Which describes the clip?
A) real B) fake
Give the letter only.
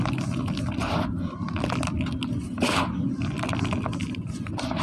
A